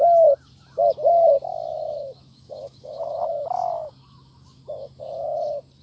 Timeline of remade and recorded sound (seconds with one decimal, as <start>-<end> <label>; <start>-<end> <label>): 0.0-1.5 recorded; 1.5-5.0 remade; 5.0-5.8 recorded